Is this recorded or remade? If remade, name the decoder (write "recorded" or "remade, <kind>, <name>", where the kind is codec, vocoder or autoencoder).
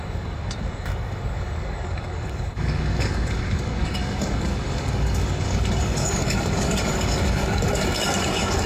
remade, codec, DAC